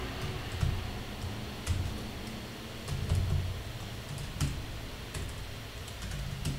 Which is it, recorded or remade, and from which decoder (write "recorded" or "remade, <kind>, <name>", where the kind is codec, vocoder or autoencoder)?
recorded